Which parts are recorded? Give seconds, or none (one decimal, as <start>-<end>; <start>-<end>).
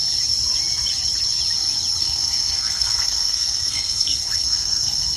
0.0-2.0